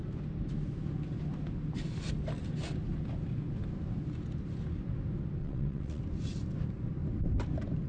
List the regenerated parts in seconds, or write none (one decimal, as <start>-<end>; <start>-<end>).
5.4-6.0